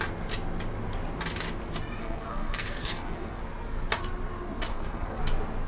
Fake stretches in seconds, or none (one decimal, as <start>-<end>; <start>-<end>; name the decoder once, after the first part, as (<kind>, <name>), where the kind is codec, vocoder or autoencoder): 2.0-3.4 (codec, SNAC); 4.7-5.2